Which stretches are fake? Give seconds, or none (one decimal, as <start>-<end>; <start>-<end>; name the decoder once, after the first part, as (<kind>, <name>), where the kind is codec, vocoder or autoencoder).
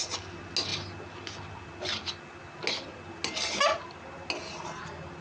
none